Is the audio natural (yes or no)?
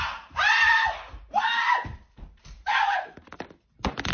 no